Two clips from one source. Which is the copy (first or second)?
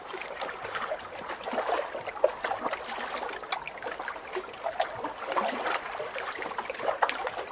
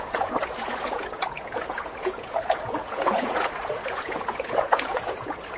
second